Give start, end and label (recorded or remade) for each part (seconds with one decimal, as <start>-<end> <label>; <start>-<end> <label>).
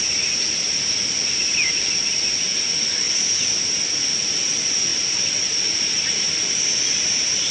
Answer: 0.0-7.5 recorded